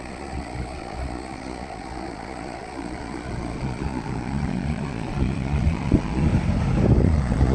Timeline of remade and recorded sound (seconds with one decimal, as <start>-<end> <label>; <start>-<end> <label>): 0.0-6.3 remade; 6.3-7.0 recorded; 7.0-7.5 remade